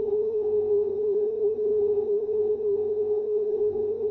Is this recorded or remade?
remade